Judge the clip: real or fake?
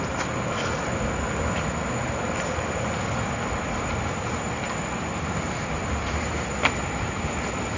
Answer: real